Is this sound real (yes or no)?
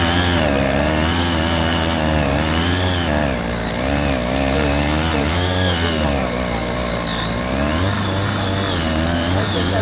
yes